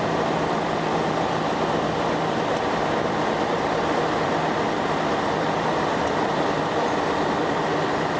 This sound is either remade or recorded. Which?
remade